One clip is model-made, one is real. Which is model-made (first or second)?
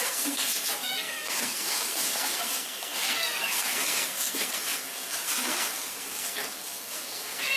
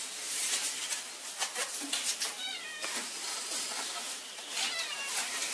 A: first